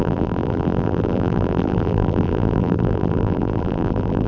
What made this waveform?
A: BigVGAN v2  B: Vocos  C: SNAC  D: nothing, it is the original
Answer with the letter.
A